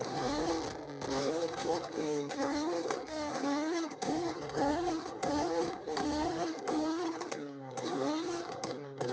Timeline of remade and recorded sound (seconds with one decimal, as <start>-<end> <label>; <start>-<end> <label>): 0.0-0.5 remade; 0.5-1.2 recorded; 1.2-9.1 remade